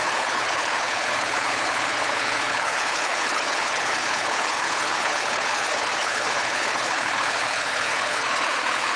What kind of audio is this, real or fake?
fake